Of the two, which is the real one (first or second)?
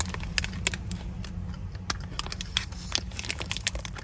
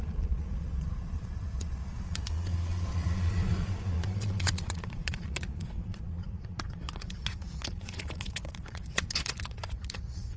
first